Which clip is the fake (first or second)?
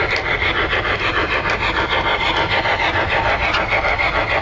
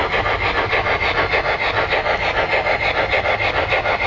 first